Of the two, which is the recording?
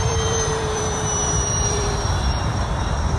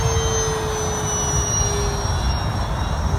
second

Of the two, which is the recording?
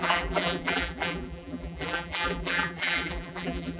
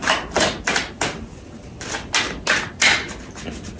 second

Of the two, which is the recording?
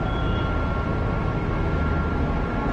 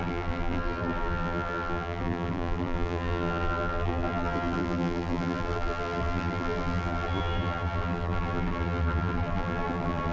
first